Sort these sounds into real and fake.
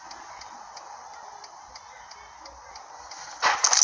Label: real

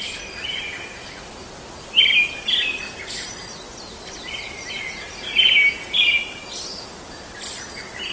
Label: real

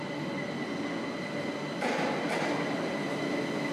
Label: real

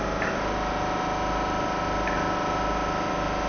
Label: real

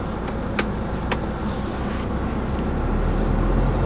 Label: real